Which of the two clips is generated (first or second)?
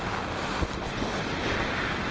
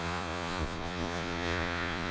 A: second